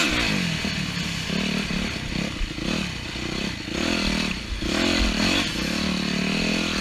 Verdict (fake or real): real